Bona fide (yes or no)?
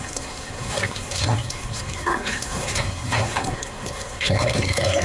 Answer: no